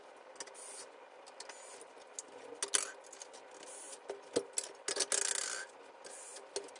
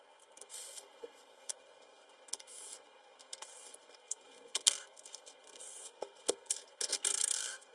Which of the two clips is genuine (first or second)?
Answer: first